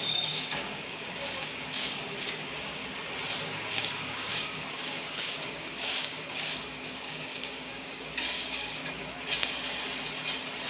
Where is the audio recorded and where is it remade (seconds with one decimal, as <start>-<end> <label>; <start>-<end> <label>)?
0.0-2.8 remade; 2.8-3.7 recorded; 3.7-8.8 remade; 8.8-10.7 recorded